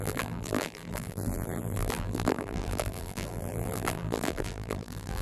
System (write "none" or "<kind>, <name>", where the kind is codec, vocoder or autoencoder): vocoder, BigVGAN v2